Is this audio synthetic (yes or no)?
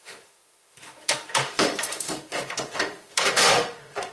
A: yes